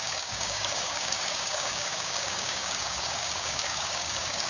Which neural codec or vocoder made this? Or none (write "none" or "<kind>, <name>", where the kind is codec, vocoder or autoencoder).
codec, DAC